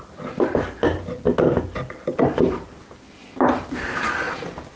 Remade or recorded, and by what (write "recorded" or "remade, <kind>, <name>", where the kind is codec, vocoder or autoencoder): recorded